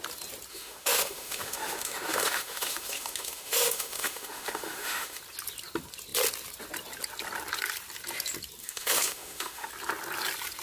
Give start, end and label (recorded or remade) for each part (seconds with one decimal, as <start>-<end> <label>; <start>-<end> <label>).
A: 0.0-0.5 recorded; 0.5-5.2 remade; 5.2-8.6 recorded; 8.6-9.7 remade; 9.7-10.6 recorded